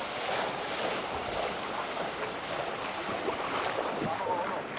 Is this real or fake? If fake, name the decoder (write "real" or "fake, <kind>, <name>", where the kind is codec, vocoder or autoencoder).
real